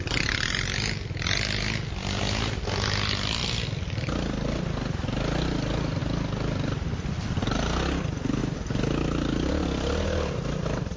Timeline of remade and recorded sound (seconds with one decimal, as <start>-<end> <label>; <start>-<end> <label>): 0.0-11.0 recorded